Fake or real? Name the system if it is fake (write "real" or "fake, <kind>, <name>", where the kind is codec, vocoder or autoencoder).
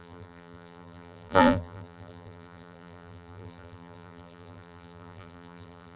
fake, vocoder, BigVGAN v2